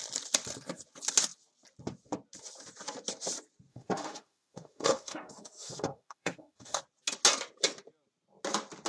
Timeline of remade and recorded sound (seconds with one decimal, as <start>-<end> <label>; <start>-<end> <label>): 0.0-3.7 recorded; 3.7-6.8 remade; 6.8-8.9 recorded